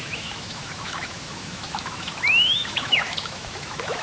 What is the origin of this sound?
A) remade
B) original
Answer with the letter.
A